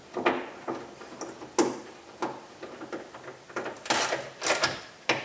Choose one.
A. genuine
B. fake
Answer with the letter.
A